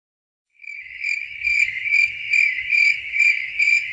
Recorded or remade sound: remade